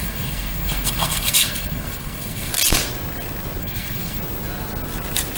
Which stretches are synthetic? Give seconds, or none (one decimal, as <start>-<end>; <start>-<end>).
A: 0.0-2.5; 3.6-4.2